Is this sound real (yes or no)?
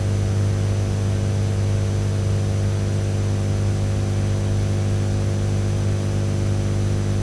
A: yes